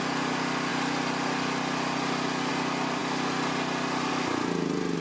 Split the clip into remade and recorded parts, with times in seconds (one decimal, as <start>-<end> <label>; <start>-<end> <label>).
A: 0.0-5.0 recorded